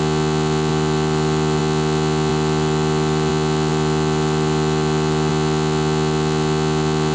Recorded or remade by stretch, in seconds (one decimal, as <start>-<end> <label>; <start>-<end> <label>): 0.0-0.7 recorded; 0.7-1.6 remade; 1.6-2.3 recorded; 2.3-3.3 remade; 3.3-3.7 recorded; 3.7-5.3 remade; 5.3-7.1 recorded